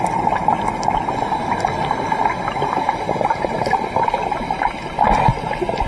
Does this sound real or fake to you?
real